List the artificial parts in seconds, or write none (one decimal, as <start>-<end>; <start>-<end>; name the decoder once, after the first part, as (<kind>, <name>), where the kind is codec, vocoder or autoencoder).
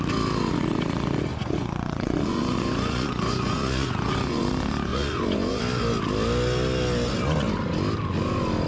1.3-4.4 (vocoder, Vocos); 4.9-5.6